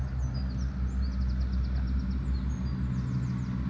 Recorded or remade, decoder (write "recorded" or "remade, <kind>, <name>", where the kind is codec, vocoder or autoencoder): recorded